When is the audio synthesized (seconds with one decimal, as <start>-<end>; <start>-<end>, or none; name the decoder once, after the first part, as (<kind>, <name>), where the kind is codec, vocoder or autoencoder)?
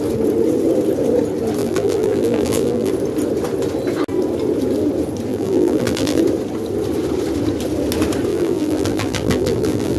1.6-2.9 (vocoder, BigVGAN v2); 5.3-6.2; 8.3-10.0